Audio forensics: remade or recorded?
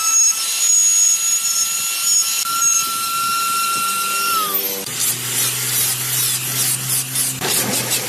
recorded